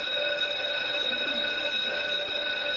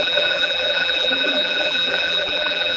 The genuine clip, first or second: first